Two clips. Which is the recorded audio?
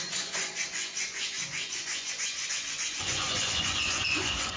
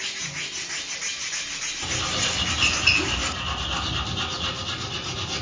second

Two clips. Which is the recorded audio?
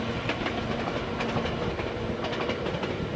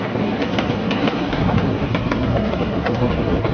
first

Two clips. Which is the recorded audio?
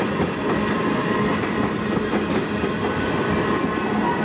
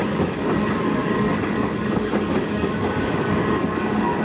first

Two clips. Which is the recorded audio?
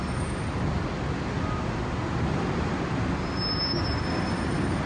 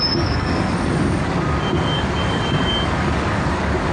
first